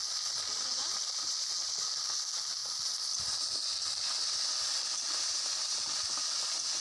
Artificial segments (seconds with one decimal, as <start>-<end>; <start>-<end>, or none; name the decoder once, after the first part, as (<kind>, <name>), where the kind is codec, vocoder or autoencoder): none